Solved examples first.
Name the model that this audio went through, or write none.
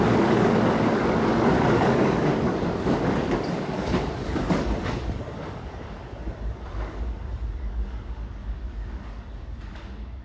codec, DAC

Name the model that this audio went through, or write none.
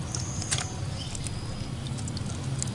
none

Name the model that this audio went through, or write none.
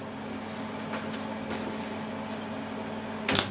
none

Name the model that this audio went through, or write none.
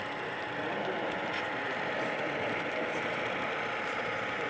none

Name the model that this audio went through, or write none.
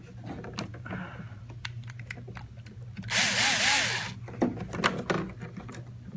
none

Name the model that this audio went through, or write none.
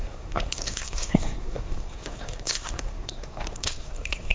codec, SNAC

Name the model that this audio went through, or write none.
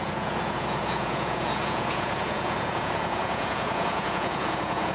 vocoder, Vocos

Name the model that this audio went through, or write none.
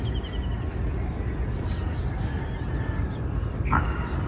none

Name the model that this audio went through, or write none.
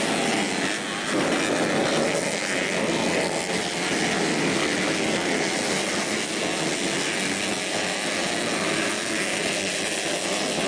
none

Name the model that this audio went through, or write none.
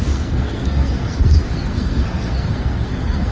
codec, SNAC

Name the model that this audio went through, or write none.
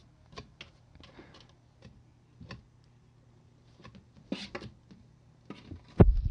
none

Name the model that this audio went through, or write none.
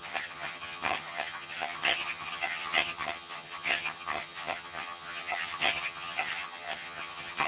vocoder, HiFi-GAN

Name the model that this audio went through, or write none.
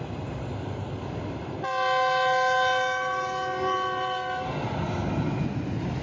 none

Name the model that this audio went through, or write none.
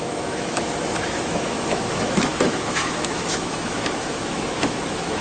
autoencoder, DAC-VAE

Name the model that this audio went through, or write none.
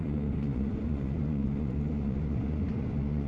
vocoder, Vocos